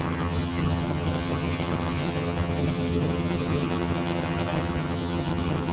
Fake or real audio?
fake